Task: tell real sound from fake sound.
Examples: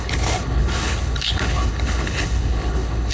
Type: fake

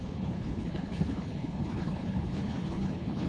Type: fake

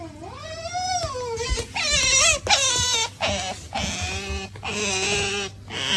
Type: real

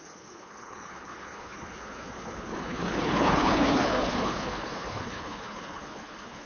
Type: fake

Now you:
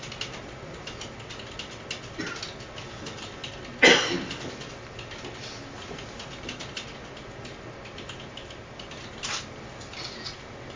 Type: real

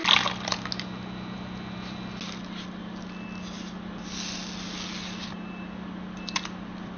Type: real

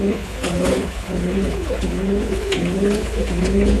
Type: fake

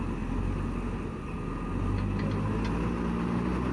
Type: real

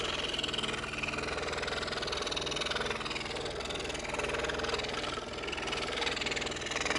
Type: real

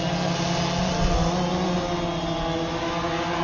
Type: real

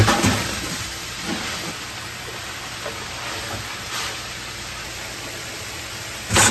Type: real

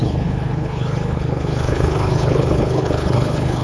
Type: fake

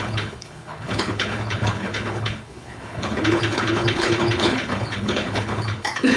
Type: fake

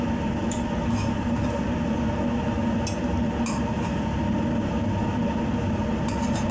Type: real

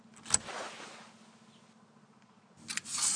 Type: real